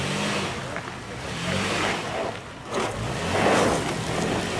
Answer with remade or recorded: recorded